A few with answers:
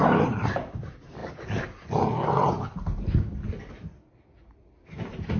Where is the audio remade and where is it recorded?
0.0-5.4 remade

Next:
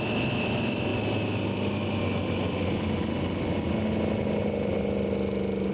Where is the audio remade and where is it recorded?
0.0-5.7 recorded